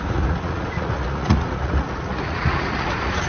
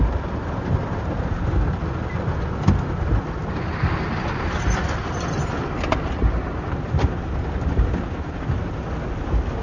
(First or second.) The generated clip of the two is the first